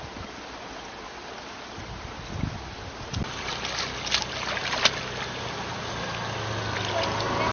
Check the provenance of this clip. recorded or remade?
recorded